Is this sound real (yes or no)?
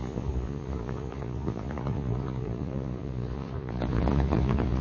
no